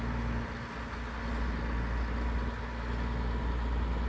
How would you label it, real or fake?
real